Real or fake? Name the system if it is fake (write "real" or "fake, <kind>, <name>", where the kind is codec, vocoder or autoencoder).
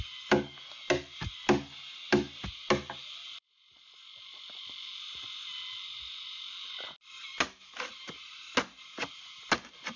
real